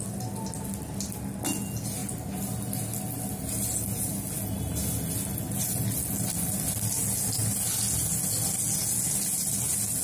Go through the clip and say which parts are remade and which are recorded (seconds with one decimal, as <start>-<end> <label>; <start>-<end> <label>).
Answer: 0.0-10.0 recorded